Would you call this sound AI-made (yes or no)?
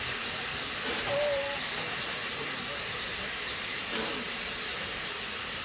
yes